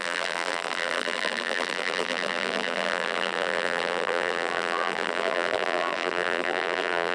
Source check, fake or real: fake